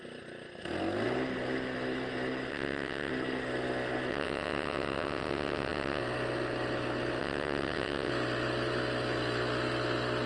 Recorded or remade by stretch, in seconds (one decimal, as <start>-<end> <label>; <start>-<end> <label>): 0.0-2.5 recorded; 2.5-3.1 remade; 3.1-4.1 recorded; 4.1-6.0 remade; 6.0-7.2 recorded; 7.2-8.1 remade; 8.1-10.3 recorded